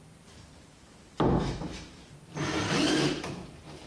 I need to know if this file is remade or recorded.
remade